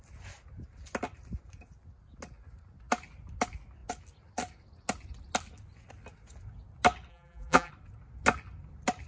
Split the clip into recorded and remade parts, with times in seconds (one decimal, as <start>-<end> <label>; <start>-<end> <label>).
0.0-7.1 recorded; 7.1-7.7 remade; 7.7-9.1 recorded